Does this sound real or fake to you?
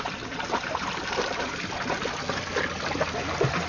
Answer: real